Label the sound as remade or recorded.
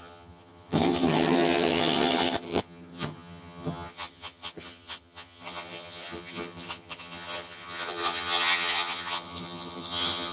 remade